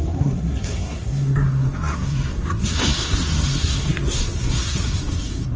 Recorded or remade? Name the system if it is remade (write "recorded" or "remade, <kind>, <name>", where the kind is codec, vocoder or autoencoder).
remade, codec, SNAC